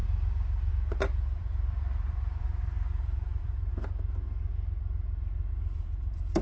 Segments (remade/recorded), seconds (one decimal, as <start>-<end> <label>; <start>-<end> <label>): 0.0-0.7 recorded; 0.7-3.7 remade; 3.7-5.5 recorded; 5.5-6.4 remade